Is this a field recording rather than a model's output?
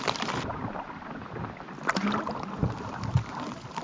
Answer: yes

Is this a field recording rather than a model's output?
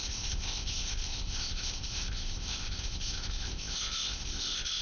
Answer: no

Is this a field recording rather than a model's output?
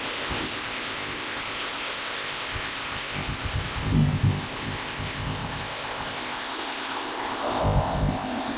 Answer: no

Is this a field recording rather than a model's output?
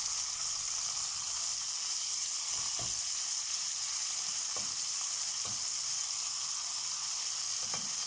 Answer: yes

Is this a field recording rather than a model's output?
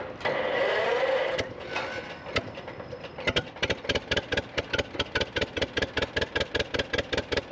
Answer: yes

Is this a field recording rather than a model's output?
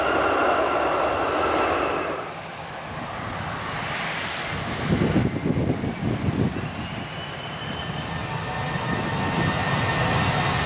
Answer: yes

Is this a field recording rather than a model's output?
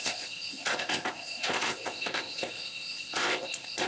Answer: no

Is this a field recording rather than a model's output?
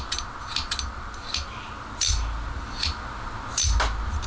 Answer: yes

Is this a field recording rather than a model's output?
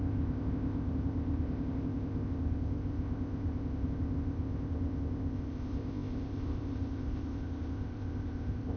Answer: no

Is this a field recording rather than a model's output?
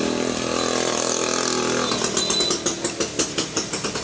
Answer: yes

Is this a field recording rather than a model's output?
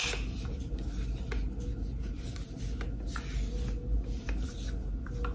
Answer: yes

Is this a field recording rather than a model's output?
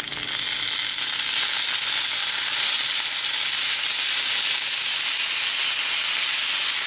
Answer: yes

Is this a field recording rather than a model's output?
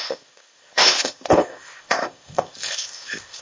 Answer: no